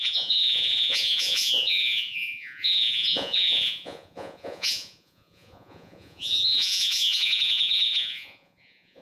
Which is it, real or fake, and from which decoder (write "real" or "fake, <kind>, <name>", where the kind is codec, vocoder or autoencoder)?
fake, vocoder, Vocos